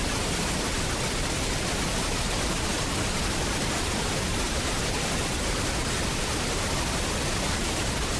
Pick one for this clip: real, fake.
real